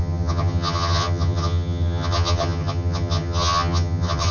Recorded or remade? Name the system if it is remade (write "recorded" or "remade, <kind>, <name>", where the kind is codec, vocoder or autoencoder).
remade, vocoder, HiFi-GAN